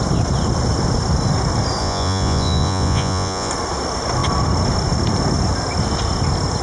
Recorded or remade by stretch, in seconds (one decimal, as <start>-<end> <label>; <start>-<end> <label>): 0.0-1.8 recorded; 1.8-3.5 remade; 3.5-6.6 recorded